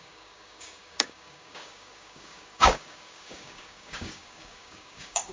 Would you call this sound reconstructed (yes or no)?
yes